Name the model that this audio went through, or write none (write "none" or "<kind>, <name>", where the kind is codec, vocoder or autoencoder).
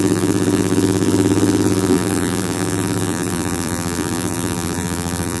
vocoder, BigVGAN v2